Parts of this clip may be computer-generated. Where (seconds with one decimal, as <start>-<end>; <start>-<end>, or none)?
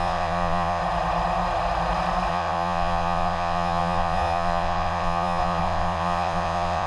0.0-0.8; 2.3-6.9